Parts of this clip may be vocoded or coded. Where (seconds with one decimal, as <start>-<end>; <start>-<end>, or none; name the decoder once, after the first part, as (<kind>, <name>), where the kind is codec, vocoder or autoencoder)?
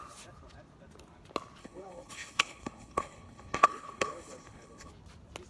1.6-4.9 (codec, HILCodec)